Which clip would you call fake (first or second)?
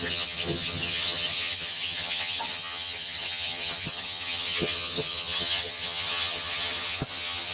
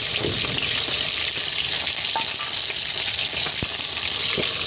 first